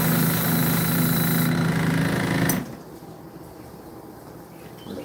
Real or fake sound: real